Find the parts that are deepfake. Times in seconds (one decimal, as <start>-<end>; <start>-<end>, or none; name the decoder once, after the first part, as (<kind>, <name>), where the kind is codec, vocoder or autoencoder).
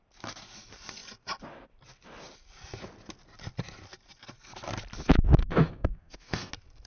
5.4-6.5 (codec, SNAC)